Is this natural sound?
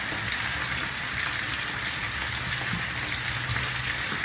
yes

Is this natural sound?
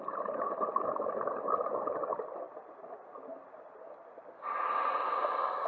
yes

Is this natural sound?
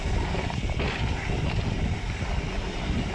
yes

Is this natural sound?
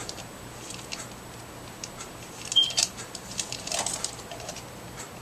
no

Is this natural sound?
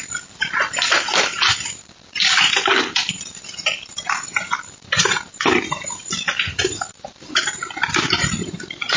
no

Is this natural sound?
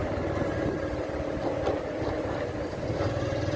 yes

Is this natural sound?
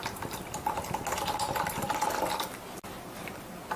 yes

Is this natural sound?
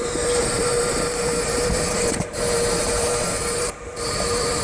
no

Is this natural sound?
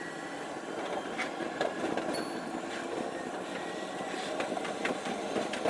no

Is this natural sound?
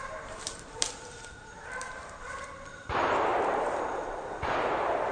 no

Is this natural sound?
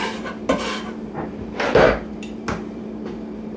no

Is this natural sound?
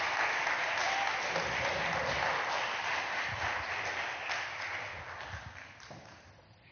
yes